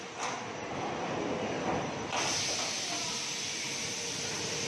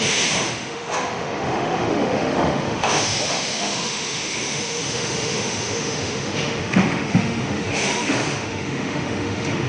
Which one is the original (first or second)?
first